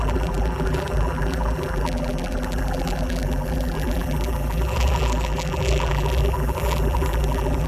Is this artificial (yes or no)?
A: yes